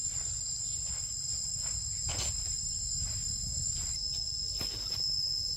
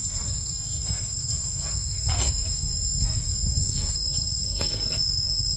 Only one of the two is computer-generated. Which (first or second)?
second